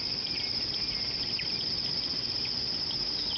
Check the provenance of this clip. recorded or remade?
recorded